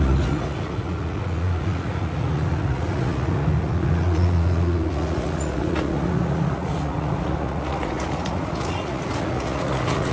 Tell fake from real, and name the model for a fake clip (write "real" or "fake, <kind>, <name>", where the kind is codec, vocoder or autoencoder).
fake, vocoder, Vocos